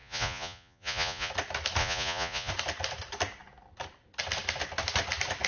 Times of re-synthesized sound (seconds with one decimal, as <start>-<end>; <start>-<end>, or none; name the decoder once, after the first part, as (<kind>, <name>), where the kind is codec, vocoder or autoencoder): 0.0-1.3 (vocoder, Vocos); 1.8-2.5